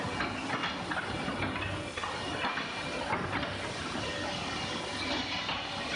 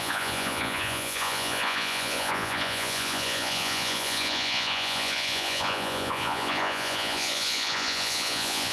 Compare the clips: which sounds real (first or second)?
first